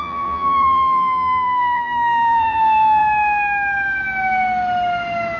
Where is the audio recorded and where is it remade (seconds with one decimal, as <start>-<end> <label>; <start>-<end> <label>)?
0.0-3.0 remade; 3.0-5.4 recorded